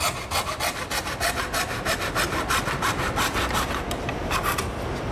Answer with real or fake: real